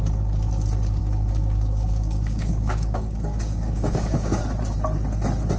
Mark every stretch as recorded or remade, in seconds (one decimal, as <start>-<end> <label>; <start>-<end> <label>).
0.0-1.0 recorded; 1.0-4.4 remade; 4.4-5.6 recorded